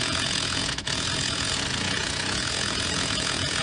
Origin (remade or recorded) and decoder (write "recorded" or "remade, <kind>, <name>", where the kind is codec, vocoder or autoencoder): remade, vocoder, Vocos